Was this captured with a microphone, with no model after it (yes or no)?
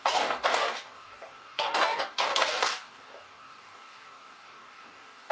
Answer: no